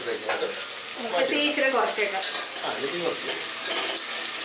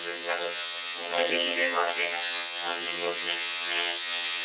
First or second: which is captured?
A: first